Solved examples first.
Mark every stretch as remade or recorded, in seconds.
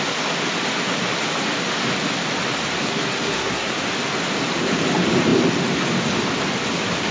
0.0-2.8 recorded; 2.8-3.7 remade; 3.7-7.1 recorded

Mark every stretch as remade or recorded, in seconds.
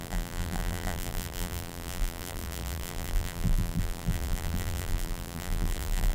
0.0-6.1 remade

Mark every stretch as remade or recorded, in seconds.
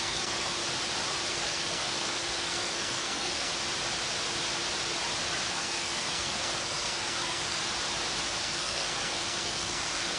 0.0-0.6 remade; 0.6-1.3 recorded; 1.3-3.5 remade; 3.5-5.5 recorded; 5.5-7.6 remade; 7.6-8.4 recorded; 8.4-10.2 remade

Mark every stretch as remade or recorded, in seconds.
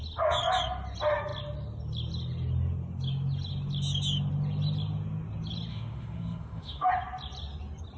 0.0-5.7 recorded; 5.7-6.9 remade; 6.9-8.0 recorded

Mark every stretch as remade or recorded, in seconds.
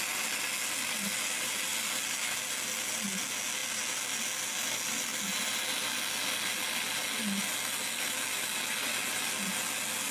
0.0-10.1 recorded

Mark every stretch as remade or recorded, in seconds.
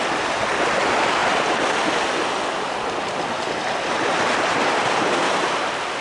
0.0-6.0 recorded